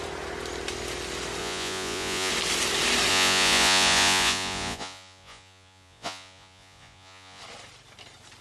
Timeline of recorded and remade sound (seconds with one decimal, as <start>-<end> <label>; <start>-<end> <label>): 0.0-1.4 recorded; 1.4-2.3 remade; 2.3-3.1 recorded; 3.1-7.4 remade; 7.4-8.4 recorded